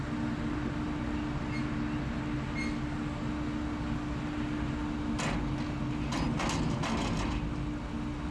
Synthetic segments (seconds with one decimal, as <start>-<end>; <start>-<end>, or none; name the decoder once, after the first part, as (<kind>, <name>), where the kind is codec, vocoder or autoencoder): none